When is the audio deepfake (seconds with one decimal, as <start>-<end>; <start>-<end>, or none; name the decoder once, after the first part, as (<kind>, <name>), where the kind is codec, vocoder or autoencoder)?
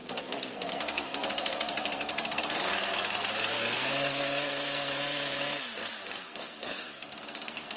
0.0-7.8 (codec, SNAC)